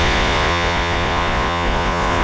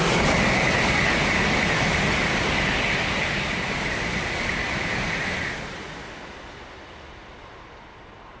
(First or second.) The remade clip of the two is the first